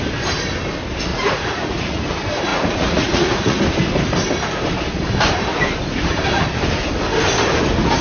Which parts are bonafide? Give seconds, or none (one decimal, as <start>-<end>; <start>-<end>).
0.0-1.1; 2.0-2.5; 3.6-8.0